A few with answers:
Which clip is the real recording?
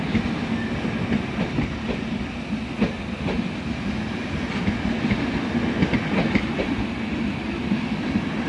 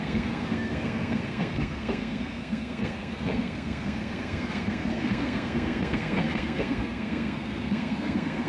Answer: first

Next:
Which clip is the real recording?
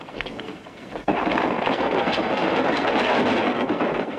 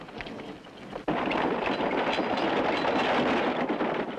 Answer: second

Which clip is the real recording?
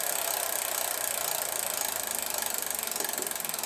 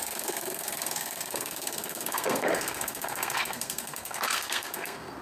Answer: first